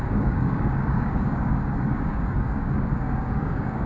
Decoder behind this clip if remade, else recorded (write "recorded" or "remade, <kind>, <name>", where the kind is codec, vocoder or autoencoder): remade, codec, DAC